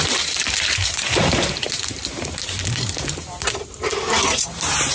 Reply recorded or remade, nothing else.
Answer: remade